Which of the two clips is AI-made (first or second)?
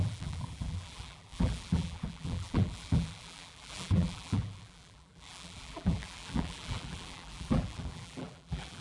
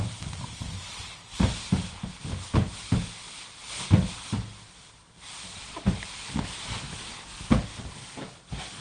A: first